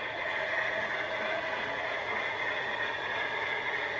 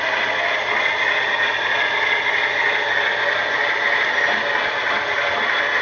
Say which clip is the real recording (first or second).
second